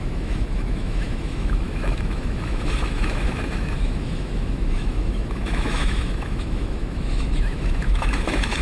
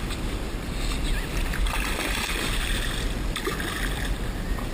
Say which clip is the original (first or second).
second